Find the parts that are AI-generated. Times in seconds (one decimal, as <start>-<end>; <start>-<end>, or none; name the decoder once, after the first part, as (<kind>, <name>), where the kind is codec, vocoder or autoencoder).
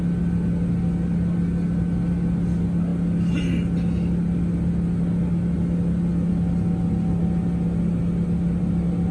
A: none